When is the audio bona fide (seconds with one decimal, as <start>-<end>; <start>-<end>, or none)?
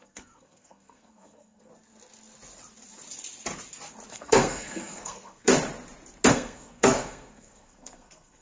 1.7-4.1; 5.5-6.3